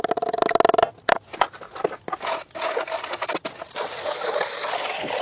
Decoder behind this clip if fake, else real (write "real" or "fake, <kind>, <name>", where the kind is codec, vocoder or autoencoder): real